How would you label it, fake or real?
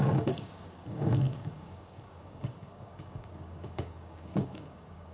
fake